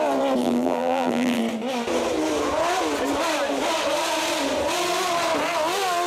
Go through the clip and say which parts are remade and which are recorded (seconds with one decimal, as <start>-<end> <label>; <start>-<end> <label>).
0.0-0.4 recorded; 0.4-1.4 remade; 1.4-6.1 recorded